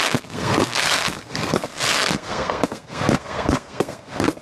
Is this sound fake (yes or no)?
yes